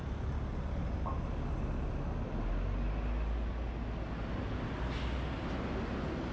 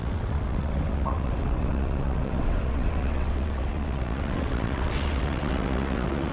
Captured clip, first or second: first